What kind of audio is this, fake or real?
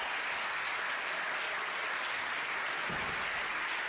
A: real